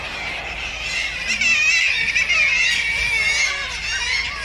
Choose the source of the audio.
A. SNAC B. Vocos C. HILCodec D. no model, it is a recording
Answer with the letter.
D